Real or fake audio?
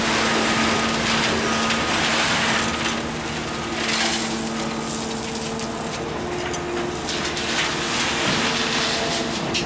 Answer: real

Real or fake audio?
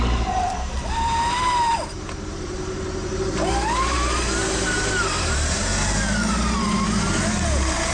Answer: fake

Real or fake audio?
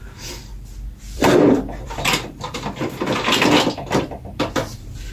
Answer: fake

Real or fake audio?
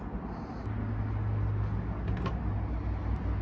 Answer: real